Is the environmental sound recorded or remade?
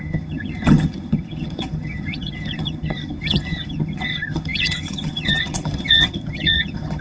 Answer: remade